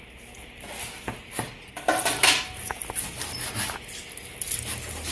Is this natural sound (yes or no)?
yes